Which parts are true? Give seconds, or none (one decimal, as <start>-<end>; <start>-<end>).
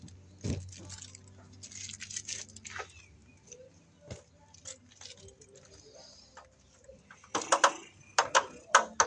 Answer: 0.0-9.1